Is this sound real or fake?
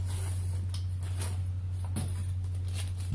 real